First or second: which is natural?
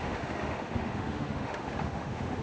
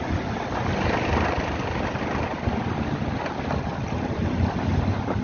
second